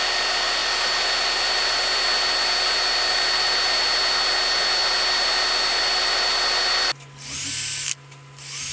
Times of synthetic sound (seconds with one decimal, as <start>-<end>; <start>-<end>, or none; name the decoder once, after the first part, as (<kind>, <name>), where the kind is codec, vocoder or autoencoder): none